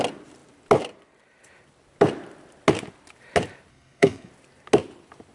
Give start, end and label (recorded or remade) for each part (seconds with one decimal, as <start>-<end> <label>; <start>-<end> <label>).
0.0-3.7 recorded; 3.7-4.3 remade; 4.3-5.3 recorded